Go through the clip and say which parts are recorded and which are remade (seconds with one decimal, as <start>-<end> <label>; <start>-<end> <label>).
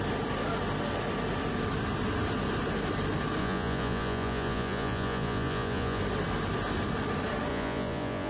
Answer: 0.0-3.4 recorded; 3.4-6.0 remade; 6.0-7.5 recorded; 7.5-8.3 remade